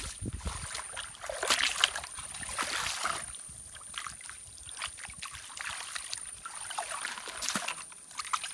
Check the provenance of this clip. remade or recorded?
recorded